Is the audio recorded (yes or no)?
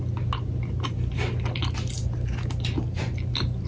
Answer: yes